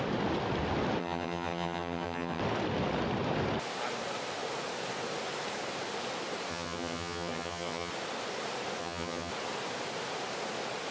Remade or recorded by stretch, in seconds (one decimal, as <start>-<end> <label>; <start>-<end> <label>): 0.0-1.0 recorded; 1.0-2.4 remade; 2.4-6.5 recorded; 6.5-7.9 remade; 7.9-8.8 recorded; 8.8-9.3 remade; 9.3-10.9 recorded